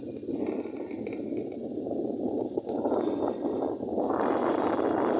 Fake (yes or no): no